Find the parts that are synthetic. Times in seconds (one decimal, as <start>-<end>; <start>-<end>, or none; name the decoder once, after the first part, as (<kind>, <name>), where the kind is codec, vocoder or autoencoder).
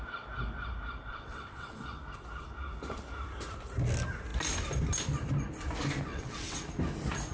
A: 1.1-2.0 (vocoder, WaveNeXt); 6.1-6.6